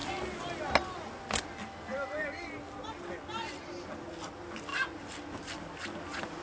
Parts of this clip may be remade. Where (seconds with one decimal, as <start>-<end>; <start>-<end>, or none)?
none